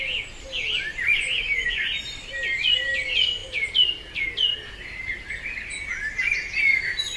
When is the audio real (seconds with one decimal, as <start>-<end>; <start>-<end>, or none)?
0.0-1.1; 2.0-7.2